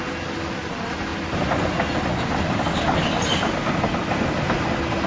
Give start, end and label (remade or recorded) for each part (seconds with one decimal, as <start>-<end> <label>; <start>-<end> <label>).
0.0-5.1 recorded